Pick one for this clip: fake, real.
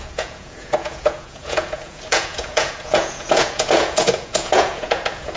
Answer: fake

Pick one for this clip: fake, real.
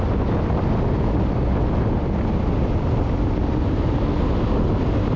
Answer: real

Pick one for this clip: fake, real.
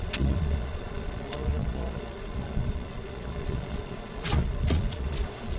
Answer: fake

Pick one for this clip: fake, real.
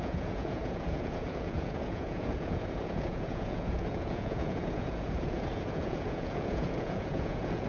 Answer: fake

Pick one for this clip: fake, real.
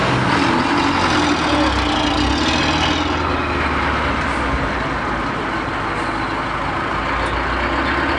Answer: real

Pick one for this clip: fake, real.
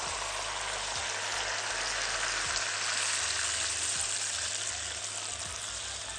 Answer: real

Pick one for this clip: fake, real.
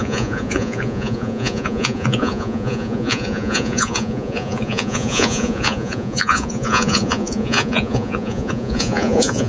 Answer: fake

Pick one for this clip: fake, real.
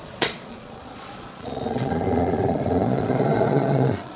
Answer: fake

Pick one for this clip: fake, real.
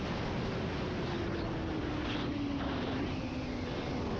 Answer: real